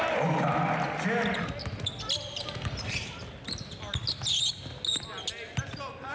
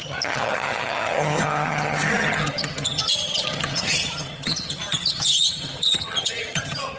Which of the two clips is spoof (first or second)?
second